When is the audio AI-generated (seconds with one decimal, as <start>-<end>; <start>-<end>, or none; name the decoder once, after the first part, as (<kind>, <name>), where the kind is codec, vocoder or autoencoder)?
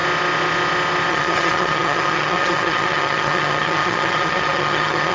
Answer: 1.1-5.1 (vocoder, HiFi-GAN)